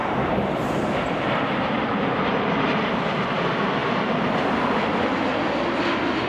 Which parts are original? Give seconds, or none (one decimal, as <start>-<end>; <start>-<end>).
3.0-6.3